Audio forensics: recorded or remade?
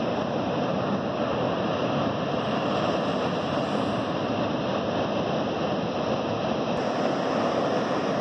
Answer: recorded